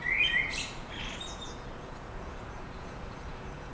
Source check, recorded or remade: remade